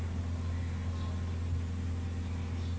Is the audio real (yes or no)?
yes